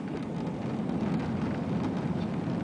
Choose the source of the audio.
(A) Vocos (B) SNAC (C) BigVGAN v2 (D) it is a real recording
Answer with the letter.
D